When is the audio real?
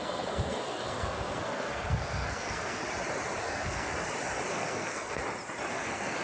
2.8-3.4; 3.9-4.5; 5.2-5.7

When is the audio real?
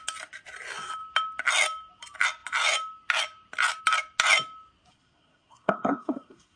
0.0-4.9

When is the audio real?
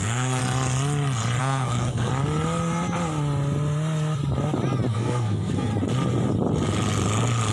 0.4-1.4; 2.1-4.9; 5.7-7.5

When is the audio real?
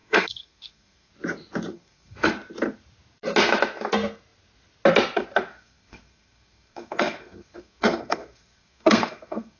1.1-1.7; 2.3-5.5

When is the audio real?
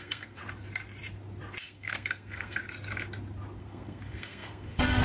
0.4-1.6; 2.6-3.6